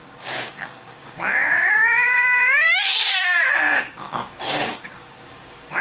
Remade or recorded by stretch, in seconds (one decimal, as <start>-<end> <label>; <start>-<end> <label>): 0.0-5.8 remade